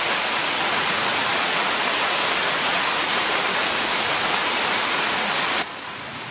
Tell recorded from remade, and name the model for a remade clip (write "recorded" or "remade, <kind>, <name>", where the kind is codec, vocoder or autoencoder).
remade, vocoder, Vocos